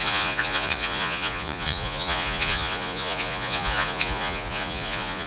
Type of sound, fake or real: fake